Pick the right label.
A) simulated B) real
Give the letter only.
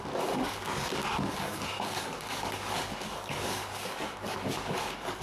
A